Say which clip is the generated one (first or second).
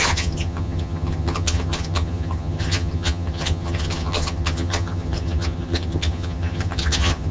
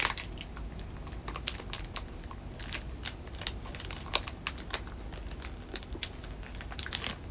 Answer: first